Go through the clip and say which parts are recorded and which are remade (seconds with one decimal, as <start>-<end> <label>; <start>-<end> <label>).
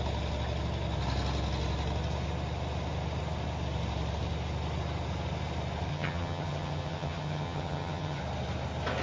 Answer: 0.0-5.9 recorded; 5.9-8.2 remade; 8.2-9.0 recorded